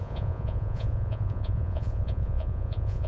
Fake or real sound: fake